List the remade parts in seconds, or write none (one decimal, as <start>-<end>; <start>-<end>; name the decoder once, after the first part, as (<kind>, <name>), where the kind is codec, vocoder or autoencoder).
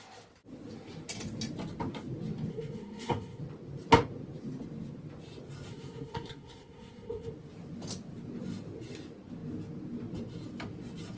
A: 2.5-3.4 (codec, SNAC); 5.7-7.3